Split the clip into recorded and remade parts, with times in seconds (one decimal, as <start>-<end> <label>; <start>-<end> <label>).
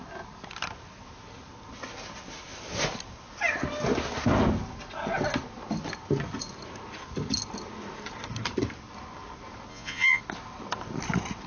0.0-9.7 recorded; 9.7-10.2 remade; 10.2-11.5 recorded